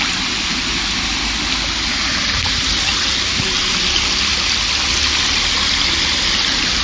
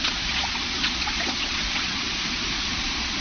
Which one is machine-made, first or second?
second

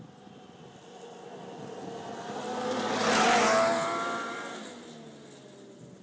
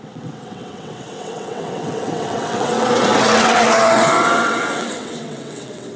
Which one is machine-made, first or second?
second